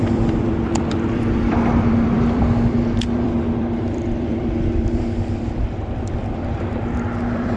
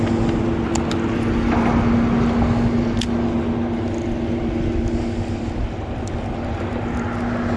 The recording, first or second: second